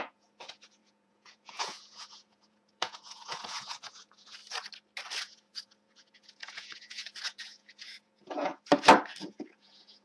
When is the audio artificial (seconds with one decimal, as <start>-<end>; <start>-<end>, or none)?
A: 0.0-4.4; 5.2-8.5; 9.2-10.0